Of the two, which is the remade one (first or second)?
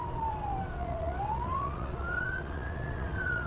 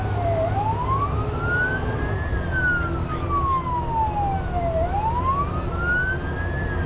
first